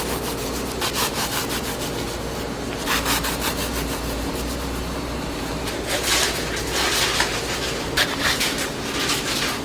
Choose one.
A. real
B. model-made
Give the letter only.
B